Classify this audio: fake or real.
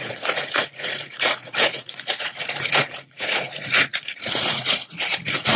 fake